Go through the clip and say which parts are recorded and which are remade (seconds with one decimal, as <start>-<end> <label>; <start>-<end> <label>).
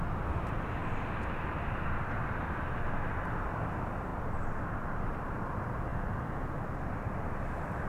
0.0-0.8 remade; 0.8-3.3 recorded; 3.3-4.1 remade; 4.1-5.0 recorded; 5.0-7.9 remade